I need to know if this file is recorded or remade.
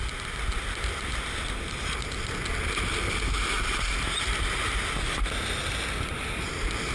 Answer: recorded